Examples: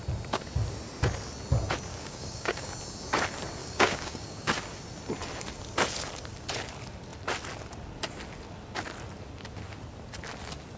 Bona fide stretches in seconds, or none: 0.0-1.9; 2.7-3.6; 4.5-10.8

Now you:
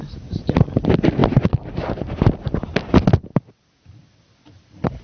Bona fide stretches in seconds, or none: 0.0-5.0